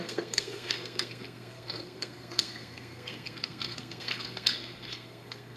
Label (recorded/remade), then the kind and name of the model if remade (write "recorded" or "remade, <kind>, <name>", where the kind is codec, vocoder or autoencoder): remade, codec, SNAC